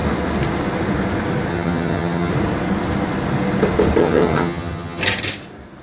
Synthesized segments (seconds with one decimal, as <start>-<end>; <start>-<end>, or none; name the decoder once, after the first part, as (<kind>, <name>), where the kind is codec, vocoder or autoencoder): 1.5-2.3 (vocoder, HiFi-GAN); 4.0-5.0

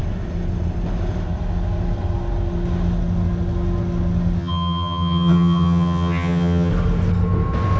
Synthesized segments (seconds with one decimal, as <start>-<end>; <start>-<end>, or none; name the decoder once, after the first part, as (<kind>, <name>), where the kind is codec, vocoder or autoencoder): 4.4-6.7 (vocoder, HiFi-GAN)

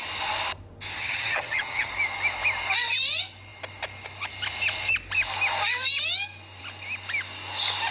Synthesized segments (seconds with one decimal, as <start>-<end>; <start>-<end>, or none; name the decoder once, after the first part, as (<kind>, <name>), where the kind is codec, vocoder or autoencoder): 1.0-1.9 (vocoder, HiFi-GAN)